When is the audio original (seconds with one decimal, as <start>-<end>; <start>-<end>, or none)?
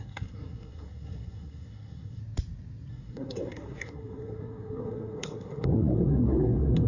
2.2-2.9